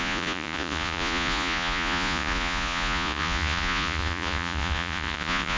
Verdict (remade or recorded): remade